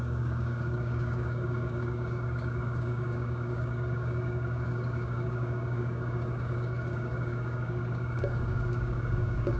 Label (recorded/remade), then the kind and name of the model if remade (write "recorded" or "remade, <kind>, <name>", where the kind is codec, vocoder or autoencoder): remade, codec, DAC